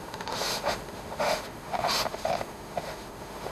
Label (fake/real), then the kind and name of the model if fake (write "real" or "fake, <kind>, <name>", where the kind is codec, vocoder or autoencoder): fake, autoencoder, DAC-VAE